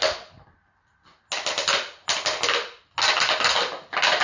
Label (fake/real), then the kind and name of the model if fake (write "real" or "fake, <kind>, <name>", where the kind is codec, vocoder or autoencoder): real